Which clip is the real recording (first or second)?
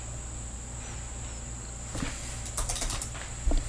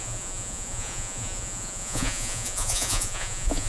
first